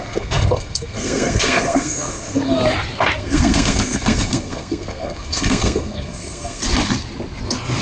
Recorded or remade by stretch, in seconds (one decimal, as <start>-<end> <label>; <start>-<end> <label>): 0.0-2.6 remade; 2.6-3.2 recorded; 3.2-6.6 remade; 6.6-7.8 recorded